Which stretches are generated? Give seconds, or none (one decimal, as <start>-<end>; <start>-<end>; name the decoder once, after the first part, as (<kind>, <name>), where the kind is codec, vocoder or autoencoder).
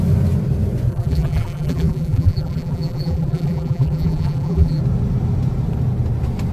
0.9-4.8 (vocoder, BigVGAN v2)